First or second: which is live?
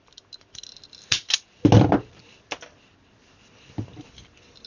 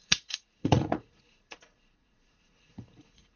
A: first